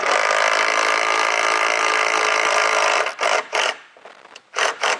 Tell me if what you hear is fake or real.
real